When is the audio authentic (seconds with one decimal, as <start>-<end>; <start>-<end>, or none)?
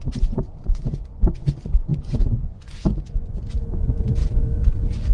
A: none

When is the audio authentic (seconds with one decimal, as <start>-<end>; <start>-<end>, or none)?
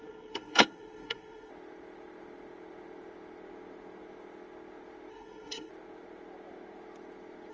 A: 1.5-5.1; 5.7-7.5